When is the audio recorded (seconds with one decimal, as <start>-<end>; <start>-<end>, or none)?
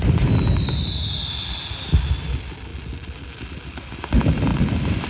0.0-5.1